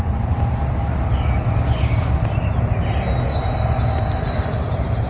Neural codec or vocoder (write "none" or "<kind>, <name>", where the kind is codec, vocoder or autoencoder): none